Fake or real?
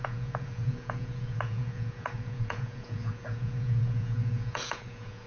fake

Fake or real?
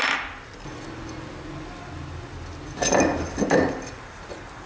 real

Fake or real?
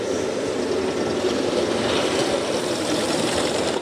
real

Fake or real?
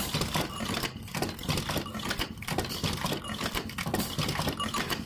real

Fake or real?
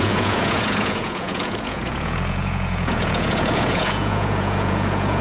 fake